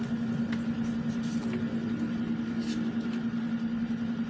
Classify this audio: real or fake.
real